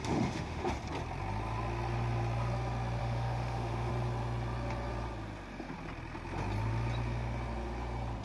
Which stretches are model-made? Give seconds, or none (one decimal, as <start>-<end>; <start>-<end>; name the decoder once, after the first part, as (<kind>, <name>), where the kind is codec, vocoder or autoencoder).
0.0-0.7 (autoencoder, DAC-VAE); 3.0-3.9